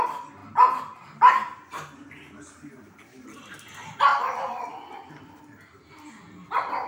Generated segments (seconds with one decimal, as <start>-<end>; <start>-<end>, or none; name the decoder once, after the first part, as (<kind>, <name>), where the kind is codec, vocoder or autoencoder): 4.1-5.1 (vocoder, BigVGAN v2)